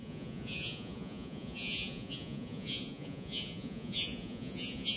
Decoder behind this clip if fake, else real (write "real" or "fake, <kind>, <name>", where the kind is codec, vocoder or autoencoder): fake, vocoder, Vocos